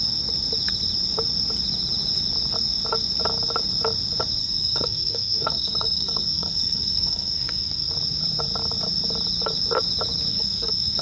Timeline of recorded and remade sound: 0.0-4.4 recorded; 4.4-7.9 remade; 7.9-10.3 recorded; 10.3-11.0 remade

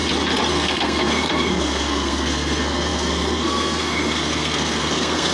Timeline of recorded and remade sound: 0.0-0.5 recorded; 0.5-5.3 remade

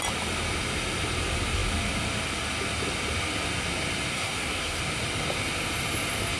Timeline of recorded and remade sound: 0.0-4.1 recorded; 4.1-4.8 remade; 4.8-6.4 recorded

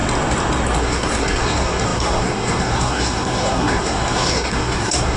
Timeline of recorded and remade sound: 0.0-0.8 recorded; 0.8-5.2 remade

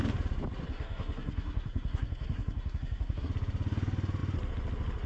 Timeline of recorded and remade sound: 0.0-0.7 recorded; 0.7-3.3 remade; 3.3-5.1 recorded

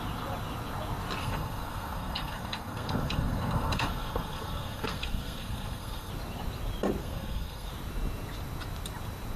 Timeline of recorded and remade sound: 0.0-1.2 recorded; 1.2-6.1 remade; 6.1-7.0 recorded; 7.0-7.7 remade; 7.7-9.4 recorded